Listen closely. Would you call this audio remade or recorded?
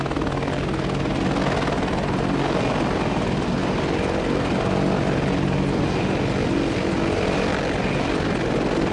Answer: recorded